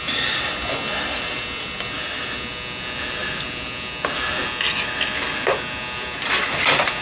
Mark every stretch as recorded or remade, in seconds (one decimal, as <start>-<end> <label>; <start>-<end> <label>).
0.0-7.0 recorded